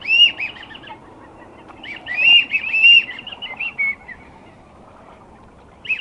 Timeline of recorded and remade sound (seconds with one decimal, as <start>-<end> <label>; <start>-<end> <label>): 0.0-1.0 recorded; 1.0-4.6 remade; 4.6-6.0 recorded